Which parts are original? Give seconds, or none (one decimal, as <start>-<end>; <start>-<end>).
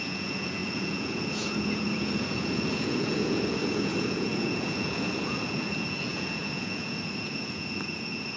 none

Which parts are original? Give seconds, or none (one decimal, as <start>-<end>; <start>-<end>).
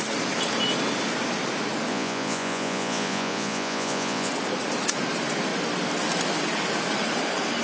0.0-1.9; 4.3-7.6